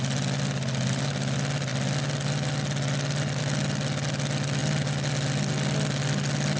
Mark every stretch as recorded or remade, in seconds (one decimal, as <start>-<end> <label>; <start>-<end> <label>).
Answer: 0.0-6.6 recorded